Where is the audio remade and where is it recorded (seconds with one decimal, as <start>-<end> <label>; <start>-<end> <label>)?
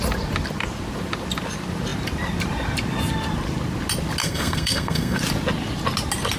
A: 0.0-4.2 recorded; 4.2-5.2 remade; 5.2-6.4 recorded